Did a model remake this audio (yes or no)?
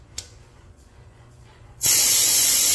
yes